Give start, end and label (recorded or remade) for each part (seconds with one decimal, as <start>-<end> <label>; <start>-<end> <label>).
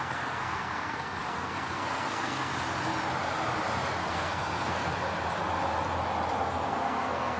0.0-2.5 remade; 2.5-4.1 recorded; 4.1-4.9 remade; 4.9-6.4 recorded; 6.4-7.4 remade